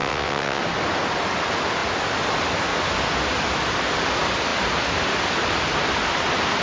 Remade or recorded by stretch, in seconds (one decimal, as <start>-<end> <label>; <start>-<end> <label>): 0.0-0.6 remade; 0.6-6.6 recorded